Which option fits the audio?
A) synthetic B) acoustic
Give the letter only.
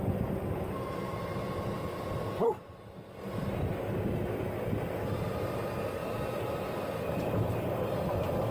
B